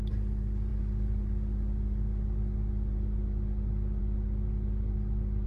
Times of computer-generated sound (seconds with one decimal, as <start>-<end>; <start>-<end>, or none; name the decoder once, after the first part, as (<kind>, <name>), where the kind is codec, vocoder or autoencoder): none